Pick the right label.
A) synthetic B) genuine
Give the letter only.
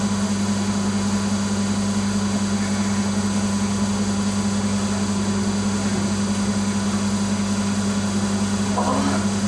B